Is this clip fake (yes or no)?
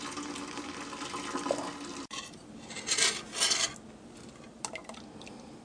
no